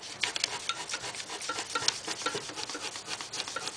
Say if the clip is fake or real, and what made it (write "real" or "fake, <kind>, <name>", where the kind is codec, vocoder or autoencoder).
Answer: real